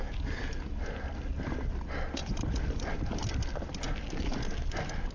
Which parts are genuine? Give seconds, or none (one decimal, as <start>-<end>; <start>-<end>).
0.0-2.2; 2.8-5.1